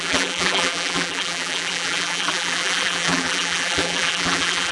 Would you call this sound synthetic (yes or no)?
yes